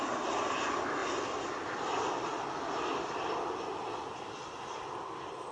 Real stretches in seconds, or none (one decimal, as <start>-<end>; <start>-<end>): 0.0-5.5